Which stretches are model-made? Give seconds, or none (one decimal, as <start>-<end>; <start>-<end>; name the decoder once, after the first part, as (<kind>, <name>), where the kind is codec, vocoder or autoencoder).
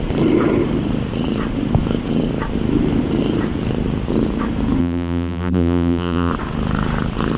4.8-6.3 (vocoder, BigVGAN v2)